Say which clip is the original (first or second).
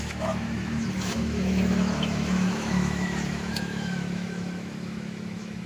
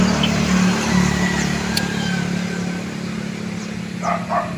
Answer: second